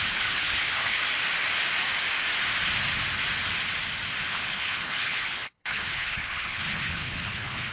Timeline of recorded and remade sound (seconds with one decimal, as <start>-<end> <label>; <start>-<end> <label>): 0.0-1.0 remade; 1.0-4.3 recorded; 4.3-7.7 remade